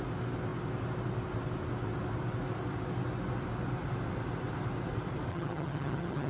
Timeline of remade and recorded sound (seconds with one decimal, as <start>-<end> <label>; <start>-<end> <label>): 0.0-5.3 recorded; 5.3-6.3 remade